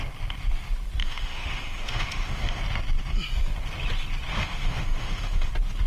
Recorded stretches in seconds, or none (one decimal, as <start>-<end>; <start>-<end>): 0.0-1.0; 2.6-4.3; 5.5-5.9